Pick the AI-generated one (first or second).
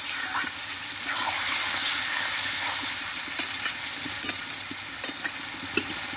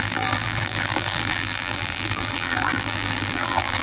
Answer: second